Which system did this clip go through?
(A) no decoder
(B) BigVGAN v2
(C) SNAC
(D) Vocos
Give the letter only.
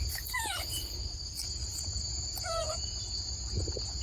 D